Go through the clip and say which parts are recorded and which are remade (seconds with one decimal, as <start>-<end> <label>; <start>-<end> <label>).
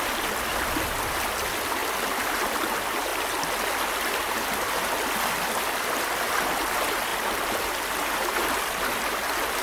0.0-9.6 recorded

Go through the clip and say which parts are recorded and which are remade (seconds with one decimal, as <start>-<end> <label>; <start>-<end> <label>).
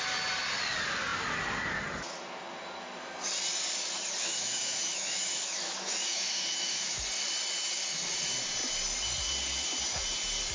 0.0-4.2 recorded; 4.2-7.0 remade; 7.0-10.5 recorded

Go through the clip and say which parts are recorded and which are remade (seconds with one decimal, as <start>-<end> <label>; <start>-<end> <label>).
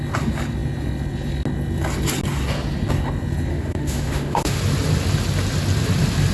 0.0-3.5 recorded; 3.5-4.6 remade; 4.6-6.3 recorded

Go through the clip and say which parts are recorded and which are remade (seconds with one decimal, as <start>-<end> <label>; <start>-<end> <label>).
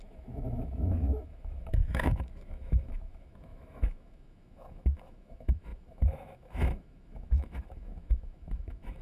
0.0-9.0 remade